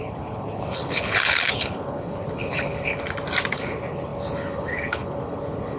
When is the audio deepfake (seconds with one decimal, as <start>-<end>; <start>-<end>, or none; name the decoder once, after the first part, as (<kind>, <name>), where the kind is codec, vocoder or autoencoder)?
0.0-2.9 (codec, HILCodec); 3.5-5.8